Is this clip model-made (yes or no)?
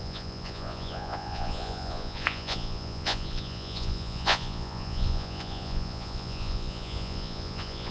yes